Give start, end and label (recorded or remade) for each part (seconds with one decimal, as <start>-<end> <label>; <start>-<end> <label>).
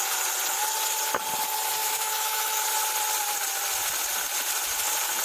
0.0-1.8 recorded; 1.8-2.6 remade; 2.6-5.2 recorded